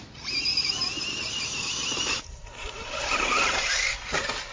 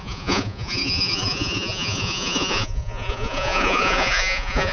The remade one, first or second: second